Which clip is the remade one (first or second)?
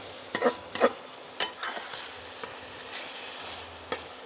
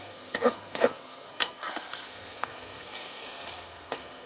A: second